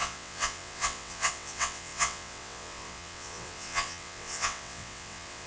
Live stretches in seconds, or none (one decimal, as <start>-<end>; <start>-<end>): none